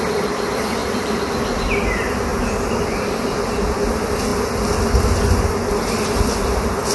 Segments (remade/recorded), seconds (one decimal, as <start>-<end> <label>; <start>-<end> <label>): 0.0-6.9 recorded